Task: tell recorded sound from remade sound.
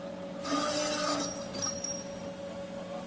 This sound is recorded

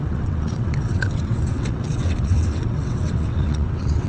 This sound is remade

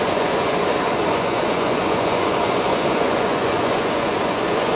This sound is remade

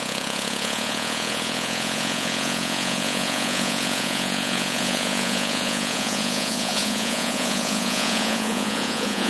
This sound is remade